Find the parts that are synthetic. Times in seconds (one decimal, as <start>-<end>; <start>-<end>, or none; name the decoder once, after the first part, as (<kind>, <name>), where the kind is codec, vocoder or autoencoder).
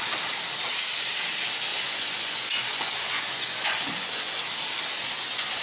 1.7-4.4 (vocoder, Vocos); 5.0-5.6